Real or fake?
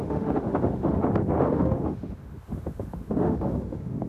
fake